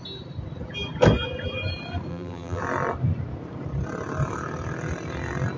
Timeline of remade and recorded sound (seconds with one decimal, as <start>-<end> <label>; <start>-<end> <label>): 0.0-2.1 recorded; 2.1-2.6 remade; 2.6-5.6 recorded